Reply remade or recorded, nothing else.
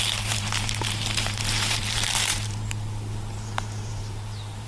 remade